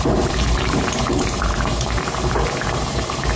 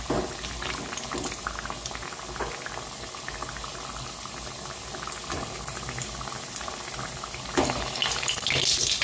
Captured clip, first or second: second